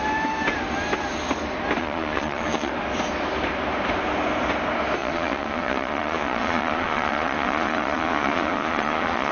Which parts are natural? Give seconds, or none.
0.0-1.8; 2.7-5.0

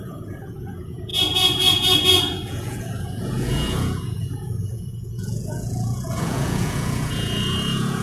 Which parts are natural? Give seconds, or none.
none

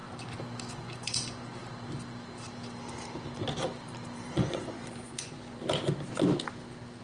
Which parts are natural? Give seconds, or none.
0.0-0.7; 1.6-4.3; 5.6-7.0

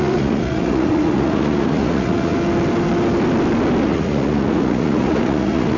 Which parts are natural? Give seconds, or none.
2.3-3.8